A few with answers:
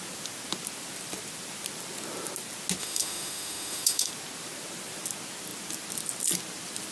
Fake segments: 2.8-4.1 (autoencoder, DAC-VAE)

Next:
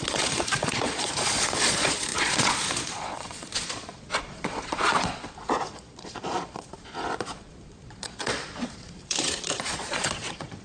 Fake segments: 0.0-10.6 (vocoder, Vocos)

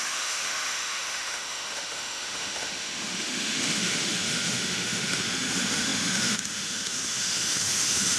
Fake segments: 0.0-8.2 (autoencoder, DAC-VAE)

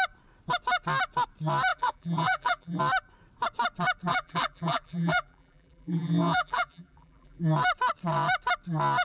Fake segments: 1.7-2.8 (vocoder, BigVGAN v2); 4.1-7.4

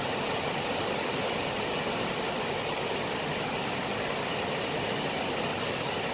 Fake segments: none